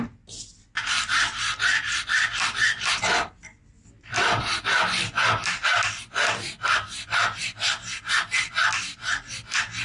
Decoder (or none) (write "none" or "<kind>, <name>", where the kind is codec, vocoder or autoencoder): none